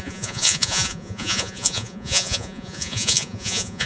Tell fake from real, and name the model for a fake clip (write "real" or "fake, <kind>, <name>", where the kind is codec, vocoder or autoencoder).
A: fake, vocoder, Vocos